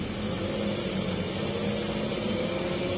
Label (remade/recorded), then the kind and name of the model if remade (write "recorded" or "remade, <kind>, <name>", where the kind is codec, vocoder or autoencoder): recorded